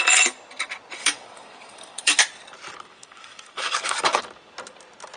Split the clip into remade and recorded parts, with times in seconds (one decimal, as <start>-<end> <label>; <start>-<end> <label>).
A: 0.0-1.0 recorded; 1.0-2.2 remade; 2.2-2.9 recorded; 2.9-4.2 remade; 4.2-5.2 recorded